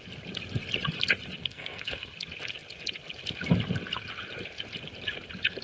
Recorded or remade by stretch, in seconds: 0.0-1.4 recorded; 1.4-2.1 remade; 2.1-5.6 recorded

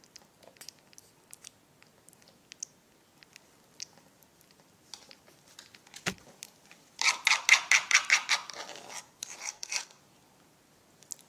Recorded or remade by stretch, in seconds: 0.0-9.4 recorded; 9.4-10.0 remade; 10.0-11.3 recorded

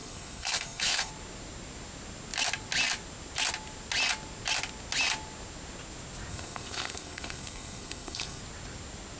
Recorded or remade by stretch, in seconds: 0.0-1.1 remade; 1.1-6.3 recorded; 6.3-8.4 remade; 8.4-9.2 recorded

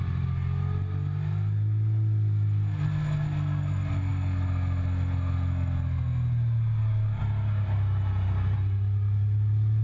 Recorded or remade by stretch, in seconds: 0.0-9.8 recorded